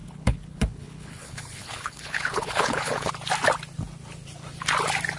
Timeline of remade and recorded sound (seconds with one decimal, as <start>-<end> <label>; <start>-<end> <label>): 0.0-3.1 remade; 3.1-5.2 recorded